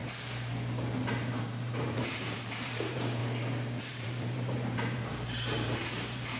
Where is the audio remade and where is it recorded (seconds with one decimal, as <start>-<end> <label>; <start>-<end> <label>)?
0.0-1.3 recorded; 1.3-3.2 remade; 3.2-3.8 recorded; 3.8-6.4 remade